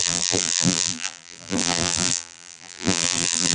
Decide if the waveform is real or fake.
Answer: fake